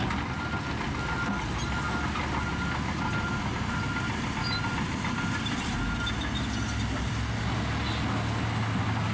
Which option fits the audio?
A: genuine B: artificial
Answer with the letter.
A